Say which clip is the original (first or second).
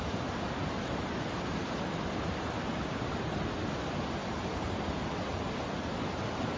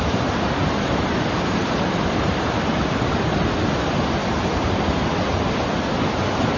first